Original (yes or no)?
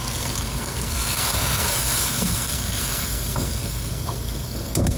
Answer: no